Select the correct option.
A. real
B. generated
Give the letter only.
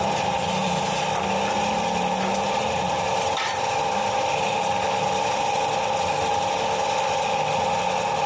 A